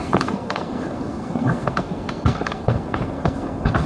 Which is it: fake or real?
fake